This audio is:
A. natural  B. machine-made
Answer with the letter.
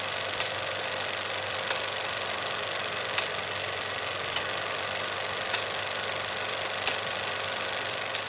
A